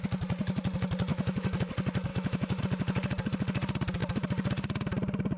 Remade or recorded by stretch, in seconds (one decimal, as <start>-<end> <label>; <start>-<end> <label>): 0.0-1.1 recorded; 1.1-1.6 remade; 1.6-2.1 recorded; 2.1-2.6 remade; 2.6-5.4 recorded